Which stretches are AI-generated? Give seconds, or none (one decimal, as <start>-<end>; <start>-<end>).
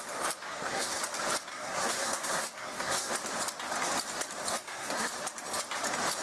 0.5-1.0; 1.5-3.1; 4.5-5.1